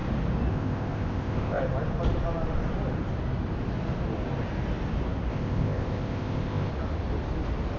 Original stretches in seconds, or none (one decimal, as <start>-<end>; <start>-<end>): 0.0-0.5; 1.6-5.3; 6.7-7.8